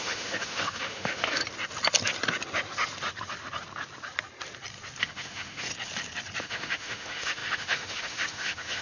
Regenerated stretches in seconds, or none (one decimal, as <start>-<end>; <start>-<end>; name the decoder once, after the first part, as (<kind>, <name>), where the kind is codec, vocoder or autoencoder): 0.0-1.4 (autoencoder, DAC-VAE); 5.0-5.7; 6.4-8.8